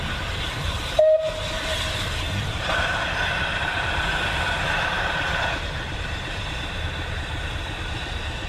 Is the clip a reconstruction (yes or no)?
yes